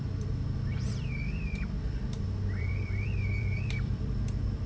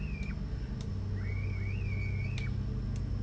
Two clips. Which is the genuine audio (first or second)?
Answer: second